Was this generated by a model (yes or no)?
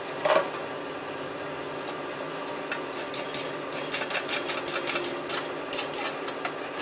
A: no